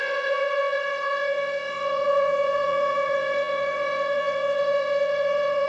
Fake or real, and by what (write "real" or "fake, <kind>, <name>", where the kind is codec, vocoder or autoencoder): fake, vocoder, Vocos